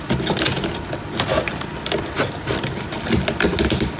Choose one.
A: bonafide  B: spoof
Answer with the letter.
A